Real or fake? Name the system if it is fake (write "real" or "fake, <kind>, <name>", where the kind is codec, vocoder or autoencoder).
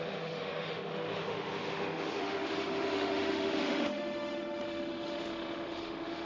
fake, autoencoder, DAC-VAE